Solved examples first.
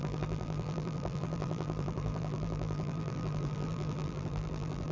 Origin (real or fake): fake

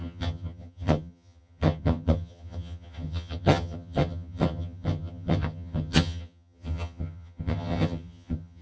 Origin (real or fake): fake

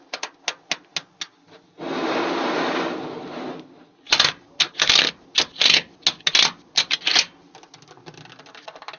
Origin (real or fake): real